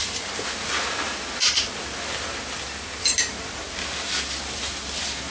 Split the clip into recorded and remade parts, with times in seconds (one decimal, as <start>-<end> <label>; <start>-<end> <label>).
0.0-5.3 recorded